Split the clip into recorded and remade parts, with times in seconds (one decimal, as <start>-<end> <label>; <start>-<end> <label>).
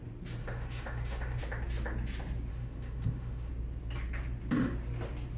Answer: 0.0-0.4 recorded; 0.4-1.4 remade; 1.4-2.5 recorded; 2.5-3.5 remade; 3.5-5.4 recorded